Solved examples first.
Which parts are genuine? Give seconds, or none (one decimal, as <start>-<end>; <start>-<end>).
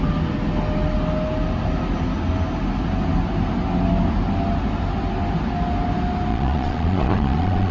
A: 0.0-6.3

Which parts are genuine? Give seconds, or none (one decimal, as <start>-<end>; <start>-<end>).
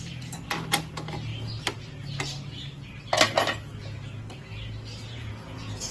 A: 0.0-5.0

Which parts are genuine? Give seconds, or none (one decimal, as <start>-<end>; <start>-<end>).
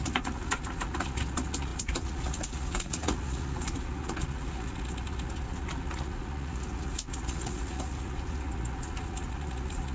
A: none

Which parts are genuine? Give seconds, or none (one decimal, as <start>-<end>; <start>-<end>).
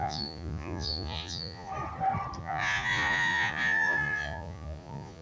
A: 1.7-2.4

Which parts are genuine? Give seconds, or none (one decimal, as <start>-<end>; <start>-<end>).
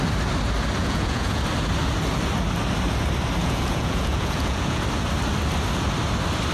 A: 0.0-0.8; 1.4-3.4; 4.8-6.5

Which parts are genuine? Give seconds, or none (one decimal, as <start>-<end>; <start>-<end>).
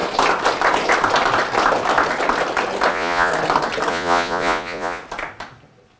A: 0.0-2.9; 3.3-3.9; 5.0-6.0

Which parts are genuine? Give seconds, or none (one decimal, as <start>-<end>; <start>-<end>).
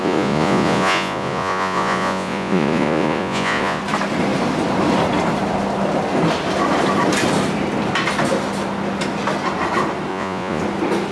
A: 3.8-10.1; 10.6-11.1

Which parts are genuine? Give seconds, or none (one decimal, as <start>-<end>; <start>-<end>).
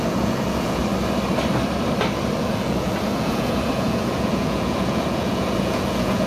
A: 0.8-2.4